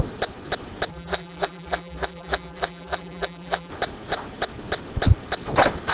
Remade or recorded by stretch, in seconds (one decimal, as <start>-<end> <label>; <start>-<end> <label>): 0.0-0.9 recorded; 0.9-3.7 remade; 3.7-5.9 recorded